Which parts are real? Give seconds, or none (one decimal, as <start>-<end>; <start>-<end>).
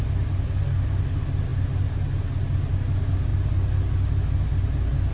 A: 0.0-5.1